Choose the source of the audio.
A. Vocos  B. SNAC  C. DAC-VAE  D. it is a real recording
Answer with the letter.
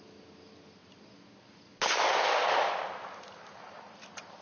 D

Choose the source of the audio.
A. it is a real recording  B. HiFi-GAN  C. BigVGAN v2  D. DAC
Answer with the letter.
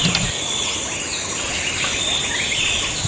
A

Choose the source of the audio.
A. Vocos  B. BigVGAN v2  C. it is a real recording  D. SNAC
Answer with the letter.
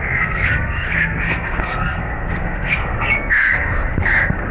D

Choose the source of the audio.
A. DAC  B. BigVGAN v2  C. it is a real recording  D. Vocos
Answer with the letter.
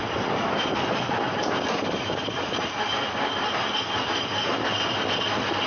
C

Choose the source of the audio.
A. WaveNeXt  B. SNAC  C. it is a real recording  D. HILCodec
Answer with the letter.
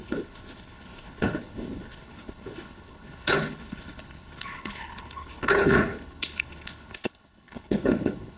D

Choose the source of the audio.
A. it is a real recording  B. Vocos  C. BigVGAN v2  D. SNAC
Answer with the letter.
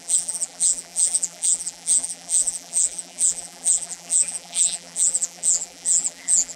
C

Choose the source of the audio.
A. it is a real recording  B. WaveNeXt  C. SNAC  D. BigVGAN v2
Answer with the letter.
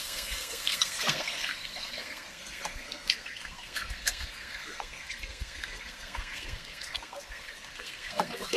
C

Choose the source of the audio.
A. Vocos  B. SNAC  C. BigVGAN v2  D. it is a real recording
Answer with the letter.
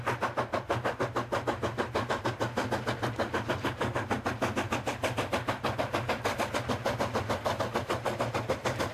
D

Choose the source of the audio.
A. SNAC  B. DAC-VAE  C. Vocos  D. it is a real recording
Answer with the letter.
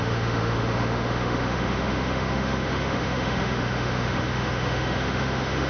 B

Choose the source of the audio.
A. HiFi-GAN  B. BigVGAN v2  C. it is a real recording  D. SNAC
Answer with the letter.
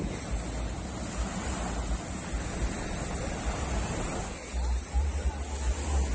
C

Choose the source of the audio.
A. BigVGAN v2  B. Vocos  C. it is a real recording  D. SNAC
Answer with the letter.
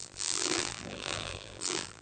A